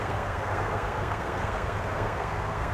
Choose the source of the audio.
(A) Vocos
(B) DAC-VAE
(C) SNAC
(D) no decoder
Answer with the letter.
C